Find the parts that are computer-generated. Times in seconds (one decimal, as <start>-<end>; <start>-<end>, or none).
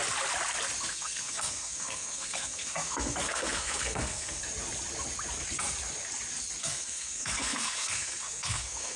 0.9-4.4; 6.6-9.0